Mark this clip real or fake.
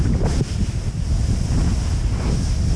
real